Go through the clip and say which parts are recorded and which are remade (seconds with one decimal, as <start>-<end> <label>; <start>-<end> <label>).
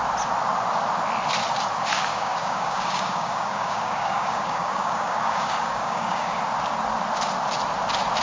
0.0-1.9 recorded; 1.9-6.4 remade; 6.4-8.2 recorded